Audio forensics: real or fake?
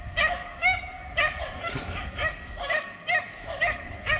fake